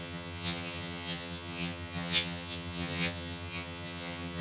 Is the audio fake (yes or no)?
yes